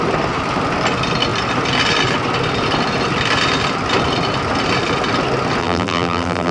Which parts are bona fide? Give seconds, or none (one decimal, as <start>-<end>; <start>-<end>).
0.0-5.6